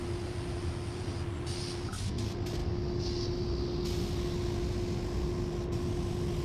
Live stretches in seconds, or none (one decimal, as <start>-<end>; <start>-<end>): 0.0-6.4

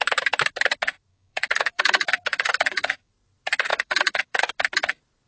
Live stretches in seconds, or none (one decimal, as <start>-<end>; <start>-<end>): 0.0-1.1; 3.1-3.7; 4.5-5.3